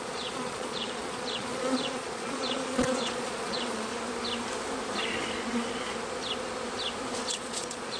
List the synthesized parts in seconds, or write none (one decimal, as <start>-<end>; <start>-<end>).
0.0-3.9; 7.3-8.0